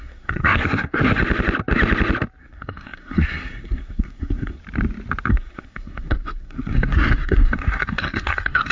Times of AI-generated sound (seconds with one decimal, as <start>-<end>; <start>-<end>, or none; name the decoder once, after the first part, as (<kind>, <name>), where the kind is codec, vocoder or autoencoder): 0.0-1.2 (codec, SNAC); 2.4-4.6; 5.3-8.7